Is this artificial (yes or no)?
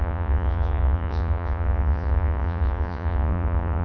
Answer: yes